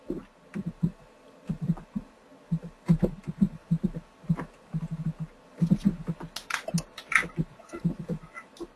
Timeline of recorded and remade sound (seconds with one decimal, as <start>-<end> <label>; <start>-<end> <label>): 0.0-0.9 recorded; 0.9-1.9 remade; 1.9-8.8 recorded